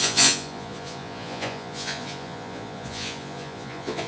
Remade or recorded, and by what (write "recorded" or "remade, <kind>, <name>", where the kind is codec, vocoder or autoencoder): remade, vocoder, Vocos